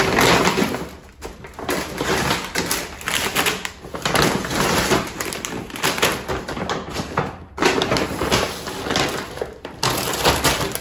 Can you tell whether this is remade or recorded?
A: recorded